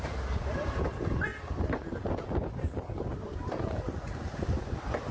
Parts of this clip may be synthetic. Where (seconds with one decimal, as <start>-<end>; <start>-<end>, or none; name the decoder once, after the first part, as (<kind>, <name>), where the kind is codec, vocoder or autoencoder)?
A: none